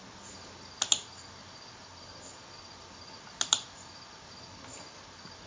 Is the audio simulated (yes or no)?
no